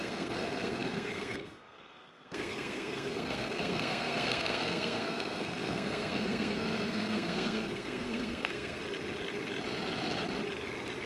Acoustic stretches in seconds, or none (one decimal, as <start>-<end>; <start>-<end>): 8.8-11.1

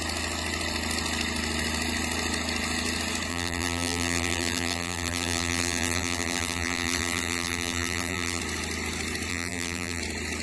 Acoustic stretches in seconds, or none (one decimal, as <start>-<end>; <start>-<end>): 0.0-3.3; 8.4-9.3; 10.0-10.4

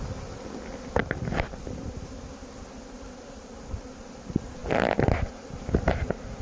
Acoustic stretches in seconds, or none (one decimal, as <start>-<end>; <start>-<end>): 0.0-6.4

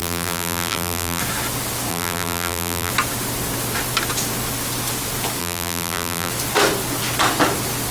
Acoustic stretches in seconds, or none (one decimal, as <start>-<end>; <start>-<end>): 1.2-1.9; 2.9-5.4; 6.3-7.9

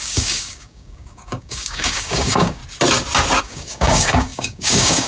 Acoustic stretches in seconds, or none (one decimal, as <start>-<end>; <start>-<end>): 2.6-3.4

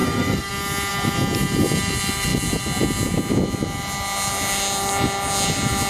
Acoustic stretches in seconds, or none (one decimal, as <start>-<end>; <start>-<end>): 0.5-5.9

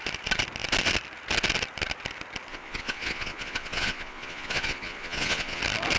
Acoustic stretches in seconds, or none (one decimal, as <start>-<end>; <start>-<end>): 0.0-2.5; 5.6-6.0